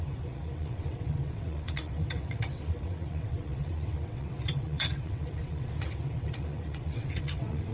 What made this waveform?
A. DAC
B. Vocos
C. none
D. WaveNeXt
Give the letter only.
D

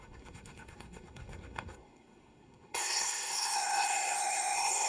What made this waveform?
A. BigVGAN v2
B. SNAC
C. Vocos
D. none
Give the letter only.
B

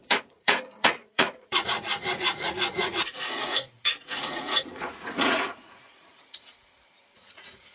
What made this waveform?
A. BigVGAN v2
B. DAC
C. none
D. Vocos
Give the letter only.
D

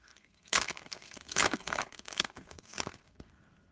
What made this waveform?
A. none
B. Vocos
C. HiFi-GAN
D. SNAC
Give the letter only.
D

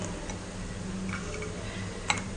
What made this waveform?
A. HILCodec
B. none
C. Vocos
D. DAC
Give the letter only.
B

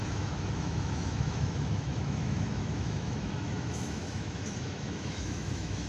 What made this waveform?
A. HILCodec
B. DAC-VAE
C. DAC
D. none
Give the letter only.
B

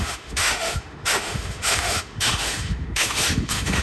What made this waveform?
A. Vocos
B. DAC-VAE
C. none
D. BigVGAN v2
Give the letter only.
B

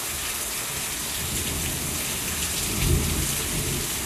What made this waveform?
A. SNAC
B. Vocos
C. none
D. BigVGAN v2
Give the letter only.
C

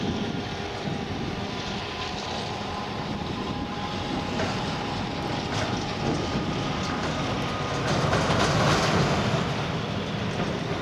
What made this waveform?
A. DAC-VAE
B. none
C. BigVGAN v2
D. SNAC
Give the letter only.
B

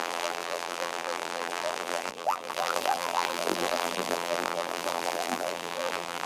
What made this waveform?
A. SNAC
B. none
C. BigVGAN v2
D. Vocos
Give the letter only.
C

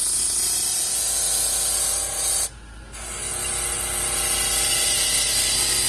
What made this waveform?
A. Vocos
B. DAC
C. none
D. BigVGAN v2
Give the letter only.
C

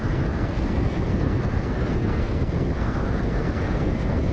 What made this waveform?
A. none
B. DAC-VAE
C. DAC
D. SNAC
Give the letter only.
D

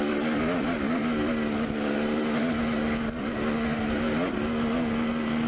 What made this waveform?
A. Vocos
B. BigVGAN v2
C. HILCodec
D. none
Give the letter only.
D